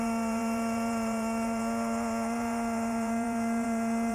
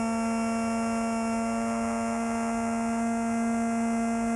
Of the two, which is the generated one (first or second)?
first